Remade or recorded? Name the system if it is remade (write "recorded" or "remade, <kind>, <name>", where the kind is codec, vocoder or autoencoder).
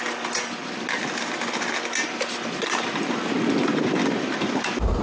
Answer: recorded